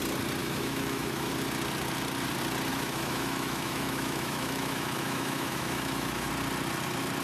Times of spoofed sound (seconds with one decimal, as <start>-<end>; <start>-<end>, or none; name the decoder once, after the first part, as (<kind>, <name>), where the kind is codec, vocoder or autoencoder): 0.4-1.3 (autoencoder, DAC-VAE); 2.7-6.3